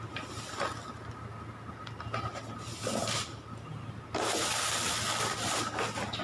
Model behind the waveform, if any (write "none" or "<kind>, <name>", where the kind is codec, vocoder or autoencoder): none